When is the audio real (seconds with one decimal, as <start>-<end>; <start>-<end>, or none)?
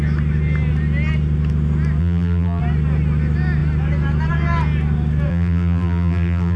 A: 0.0-2.0; 2.6-5.3